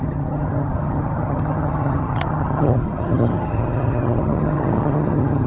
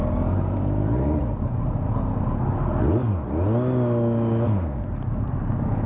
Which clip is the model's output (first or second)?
first